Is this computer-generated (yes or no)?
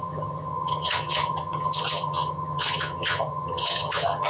yes